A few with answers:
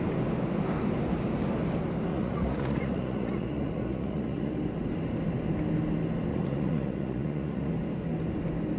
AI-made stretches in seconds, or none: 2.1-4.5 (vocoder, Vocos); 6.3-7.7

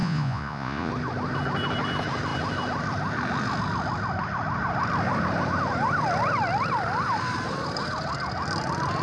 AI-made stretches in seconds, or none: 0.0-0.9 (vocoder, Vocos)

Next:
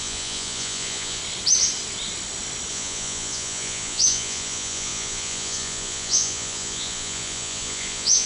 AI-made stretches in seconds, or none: 0.0-1.2 (vocoder, Vocos); 2.7-8.3